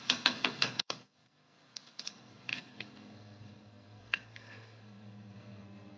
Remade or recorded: remade